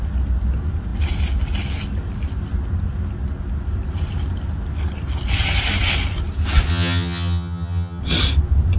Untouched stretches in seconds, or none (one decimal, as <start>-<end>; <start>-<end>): 0.0-6.7; 8.0-8.8